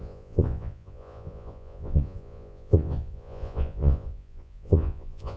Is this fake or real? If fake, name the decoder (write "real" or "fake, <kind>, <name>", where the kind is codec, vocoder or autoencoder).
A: fake, vocoder, Vocos